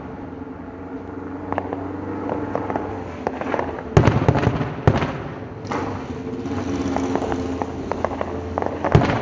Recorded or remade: recorded